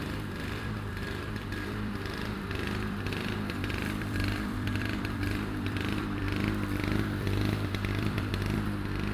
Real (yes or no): no